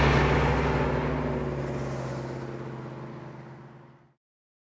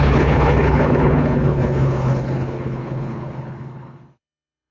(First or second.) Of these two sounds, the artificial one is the second